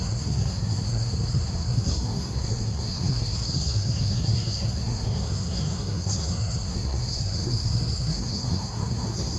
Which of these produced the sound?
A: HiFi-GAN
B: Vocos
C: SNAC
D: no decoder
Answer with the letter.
C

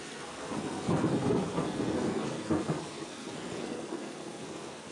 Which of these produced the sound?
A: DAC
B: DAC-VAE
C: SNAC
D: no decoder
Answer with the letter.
C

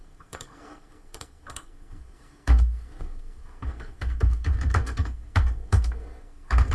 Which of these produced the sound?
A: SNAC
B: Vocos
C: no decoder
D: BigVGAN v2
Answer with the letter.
A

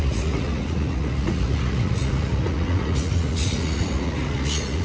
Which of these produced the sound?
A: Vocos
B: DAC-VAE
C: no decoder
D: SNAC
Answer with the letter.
A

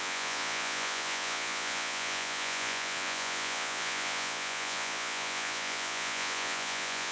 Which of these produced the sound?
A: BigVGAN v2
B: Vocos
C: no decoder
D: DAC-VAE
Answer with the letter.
B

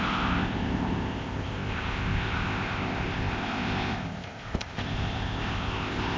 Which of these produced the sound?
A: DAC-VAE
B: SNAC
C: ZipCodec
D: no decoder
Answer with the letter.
C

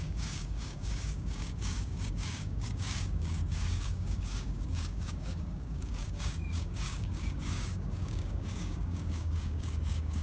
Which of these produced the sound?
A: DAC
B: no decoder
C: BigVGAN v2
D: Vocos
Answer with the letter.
A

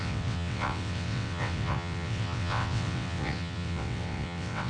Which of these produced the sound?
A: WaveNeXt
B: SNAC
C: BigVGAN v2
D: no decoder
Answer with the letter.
A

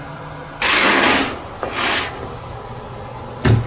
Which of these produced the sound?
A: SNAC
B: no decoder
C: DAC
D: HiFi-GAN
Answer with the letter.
B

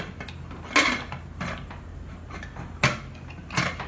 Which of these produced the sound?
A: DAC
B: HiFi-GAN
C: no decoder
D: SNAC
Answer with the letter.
C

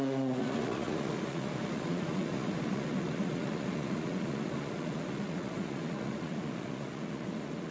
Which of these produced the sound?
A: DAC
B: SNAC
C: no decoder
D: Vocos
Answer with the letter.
D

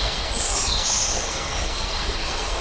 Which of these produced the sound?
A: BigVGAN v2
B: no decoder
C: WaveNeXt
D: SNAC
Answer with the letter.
D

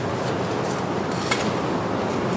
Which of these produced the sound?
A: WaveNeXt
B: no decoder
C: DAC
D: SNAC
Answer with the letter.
B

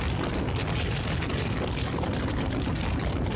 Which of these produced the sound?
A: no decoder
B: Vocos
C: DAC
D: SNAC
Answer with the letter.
A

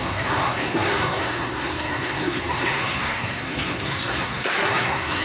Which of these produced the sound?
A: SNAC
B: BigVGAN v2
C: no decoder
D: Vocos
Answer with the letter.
A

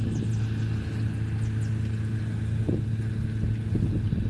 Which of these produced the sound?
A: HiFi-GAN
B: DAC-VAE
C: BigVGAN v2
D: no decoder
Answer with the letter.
D